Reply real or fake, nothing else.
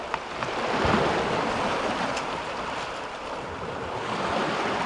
real